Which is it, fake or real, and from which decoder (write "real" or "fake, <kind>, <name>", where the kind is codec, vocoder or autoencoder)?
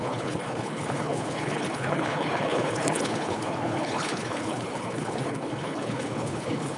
fake, codec, HILCodec